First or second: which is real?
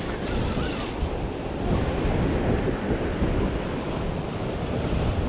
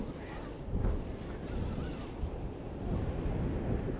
second